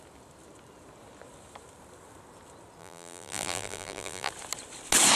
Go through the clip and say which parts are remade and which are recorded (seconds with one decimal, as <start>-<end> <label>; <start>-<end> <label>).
0.0-2.8 recorded; 2.8-4.3 remade; 4.3-5.2 recorded